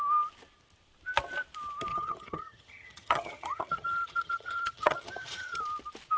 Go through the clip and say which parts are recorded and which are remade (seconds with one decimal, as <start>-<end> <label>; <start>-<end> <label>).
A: 0.0-1.9 recorded; 1.9-5.6 remade; 5.6-6.2 recorded